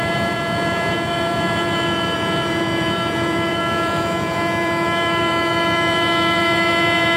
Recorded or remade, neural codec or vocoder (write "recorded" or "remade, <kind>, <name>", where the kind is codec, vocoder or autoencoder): remade, vocoder, Vocos